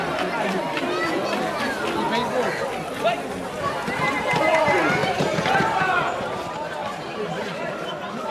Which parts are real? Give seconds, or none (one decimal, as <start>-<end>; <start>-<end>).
0.0-5.0; 5.8-6.8; 7.7-8.3